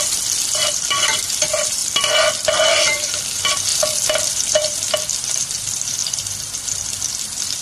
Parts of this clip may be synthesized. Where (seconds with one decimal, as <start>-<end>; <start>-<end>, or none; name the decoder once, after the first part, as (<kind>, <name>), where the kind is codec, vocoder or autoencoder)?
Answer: 0.0-1.8 (vocoder, BigVGAN v2); 2.5-7.6